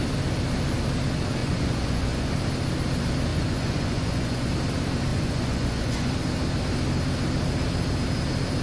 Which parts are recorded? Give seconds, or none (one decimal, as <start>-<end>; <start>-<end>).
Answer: 0.0-1.4; 2.3-3.3; 4.5-5.1; 6.1-8.6